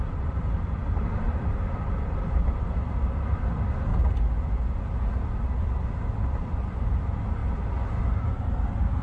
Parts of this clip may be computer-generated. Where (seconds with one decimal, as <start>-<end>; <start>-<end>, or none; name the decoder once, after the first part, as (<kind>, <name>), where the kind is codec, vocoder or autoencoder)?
0.0-3.9 (vocoder, BigVGAN v2); 6.2-7.4; 8.1-9.0